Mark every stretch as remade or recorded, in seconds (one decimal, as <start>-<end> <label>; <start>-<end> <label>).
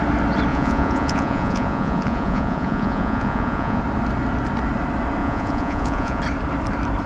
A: 0.0-0.5 recorded; 0.5-3.8 remade; 3.8-5.2 recorded; 5.2-6.2 remade; 6.2-7.1 recorded